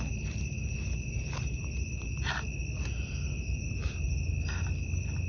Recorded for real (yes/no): yes